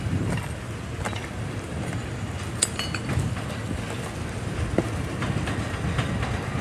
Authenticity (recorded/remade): recorded